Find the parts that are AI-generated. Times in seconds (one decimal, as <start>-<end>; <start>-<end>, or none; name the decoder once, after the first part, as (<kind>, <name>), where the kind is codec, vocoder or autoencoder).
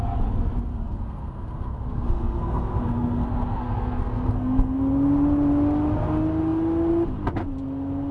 0.7-4.8 (codec, SNAC)